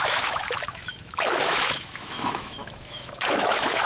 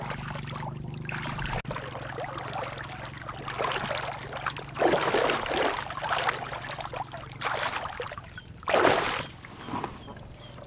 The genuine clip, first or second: second